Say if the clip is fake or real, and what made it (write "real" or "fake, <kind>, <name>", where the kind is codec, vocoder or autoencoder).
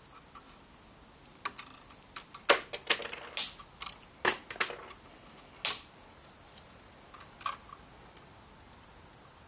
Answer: real